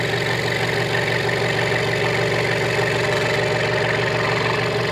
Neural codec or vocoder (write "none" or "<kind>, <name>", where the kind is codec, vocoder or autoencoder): none